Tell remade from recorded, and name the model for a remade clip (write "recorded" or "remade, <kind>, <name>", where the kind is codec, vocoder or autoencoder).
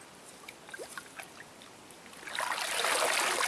remade, vocoder, BigVGAN v2